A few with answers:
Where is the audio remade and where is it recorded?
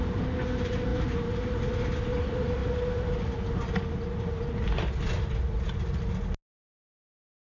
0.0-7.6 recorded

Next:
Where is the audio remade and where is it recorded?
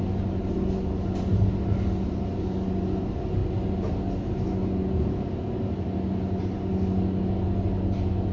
0.0-8.3 recorded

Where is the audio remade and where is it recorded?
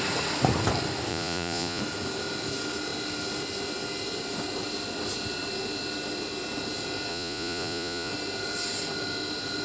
0.0-1.1 recorded; 1.1-1.8 remade; 1.8-7.1 recorded; 7.1-8.1 remade; 8.1-9.6 recorded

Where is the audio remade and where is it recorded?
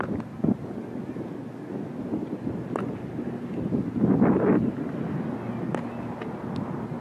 0.0-7.0 recorded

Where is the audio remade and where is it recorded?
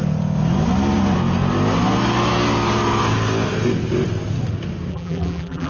0.0-4.9 recorded; 4.9-5.7 remade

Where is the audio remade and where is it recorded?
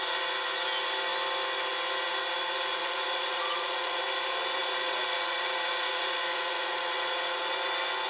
0.0-2.8 recorded; 2.8-4.0 remade; 4.0-4.6 recorded; 4.6-7.5 remade; 7.5-8.1 recorded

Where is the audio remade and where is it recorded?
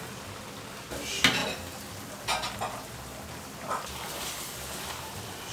0.0-5.5 recorded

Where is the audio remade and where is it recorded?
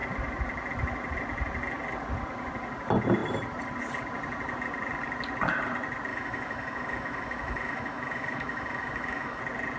0.0-6.1 recorded; 6.1-9.4 remade; 9.4-9.8 recorded